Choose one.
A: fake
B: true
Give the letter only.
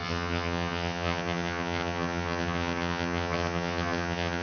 A